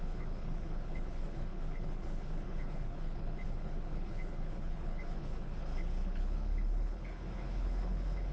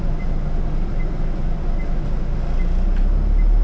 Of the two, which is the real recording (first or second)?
second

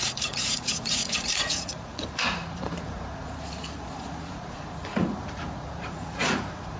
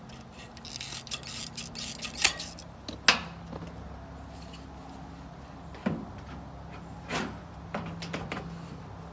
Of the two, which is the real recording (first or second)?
second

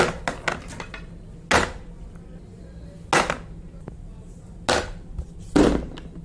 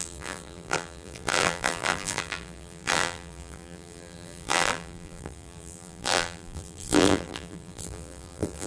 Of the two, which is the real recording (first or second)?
first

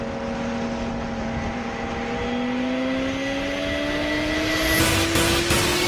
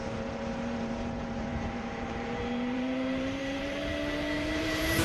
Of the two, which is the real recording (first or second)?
first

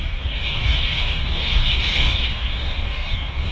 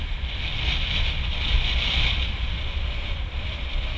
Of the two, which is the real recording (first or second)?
second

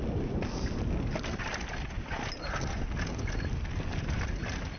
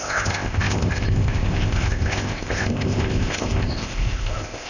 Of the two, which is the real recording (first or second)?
first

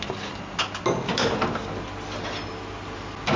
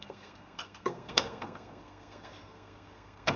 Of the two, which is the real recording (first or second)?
first